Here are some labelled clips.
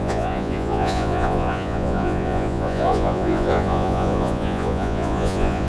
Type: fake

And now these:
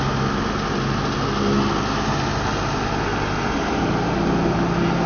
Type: real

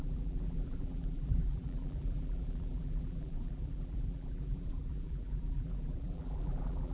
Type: fake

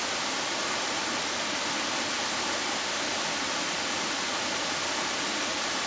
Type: real